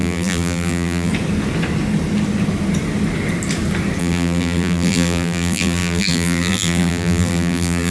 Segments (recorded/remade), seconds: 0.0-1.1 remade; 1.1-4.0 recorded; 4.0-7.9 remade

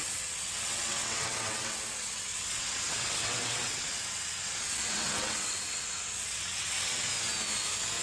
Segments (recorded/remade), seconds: 0.0-7.1 remade; 7.1-8.0 recorded

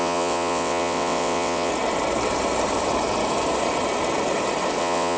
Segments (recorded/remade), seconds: 0.0-1.7 remade; 1.7-4.8 recorded; 4.8-5.2 remade

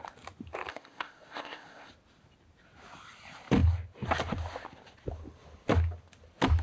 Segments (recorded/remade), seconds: 0.0-0.7 recorded; 0.7-1.9 remade; 1.9-6.6 recorded

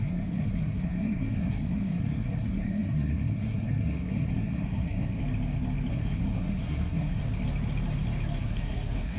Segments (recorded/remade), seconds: 0.0-5.2 remade; 5.2-5.9 recorded; 5.9-7.2 remade; 7.2-8.4 recorded; 8.4-9.2 remade